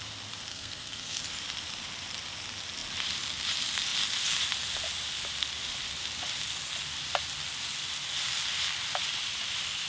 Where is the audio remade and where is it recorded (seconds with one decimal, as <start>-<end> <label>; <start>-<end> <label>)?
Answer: 0.0-0.5 recorded; 0.5-1.2 remade; 1.2-9.9 recorded